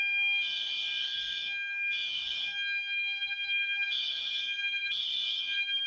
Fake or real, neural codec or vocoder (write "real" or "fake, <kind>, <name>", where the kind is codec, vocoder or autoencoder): fake, codec, DAC